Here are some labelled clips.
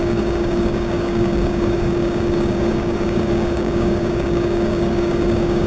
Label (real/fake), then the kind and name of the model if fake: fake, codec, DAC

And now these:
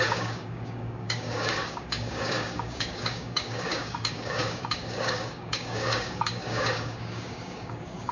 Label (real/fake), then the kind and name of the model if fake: fake, codec, DAC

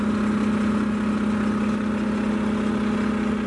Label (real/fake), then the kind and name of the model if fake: real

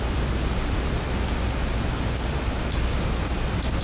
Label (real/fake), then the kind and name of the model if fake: real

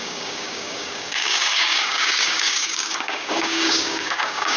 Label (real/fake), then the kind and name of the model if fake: fake, codec, DAC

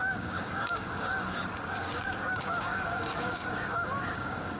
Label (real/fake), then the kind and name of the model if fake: fake, codec, DAC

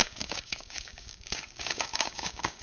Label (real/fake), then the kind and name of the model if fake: fake, codec, DAC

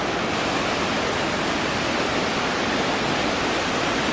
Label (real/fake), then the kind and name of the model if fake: real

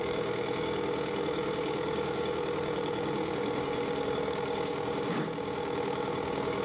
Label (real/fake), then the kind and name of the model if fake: fake, codec, DAC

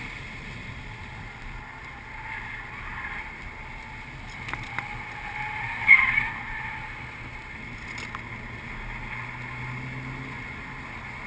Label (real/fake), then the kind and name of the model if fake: real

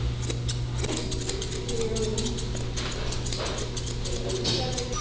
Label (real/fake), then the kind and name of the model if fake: real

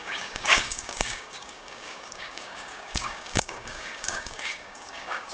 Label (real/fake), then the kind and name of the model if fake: fake, codec, DAC